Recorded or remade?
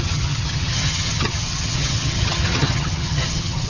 remade